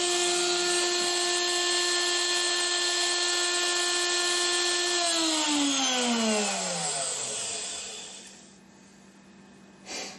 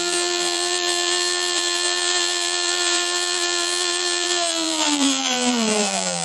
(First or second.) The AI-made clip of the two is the second